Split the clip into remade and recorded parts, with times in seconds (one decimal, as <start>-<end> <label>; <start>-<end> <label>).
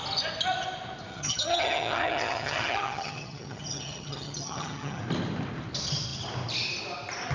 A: 0.0-1.1 recorded; 1.1-5.0 remade; 5.0-7.3 recorded